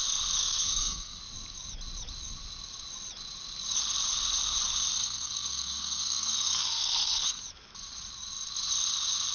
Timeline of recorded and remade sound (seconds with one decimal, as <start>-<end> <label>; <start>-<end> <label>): 0.0-0.4 recorded; 0.4-1.2 remade; 1.2-4.9 recorded; 4.9-7.4 remade; 7.4-9.3 recorded